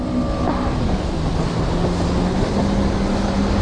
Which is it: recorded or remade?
recorded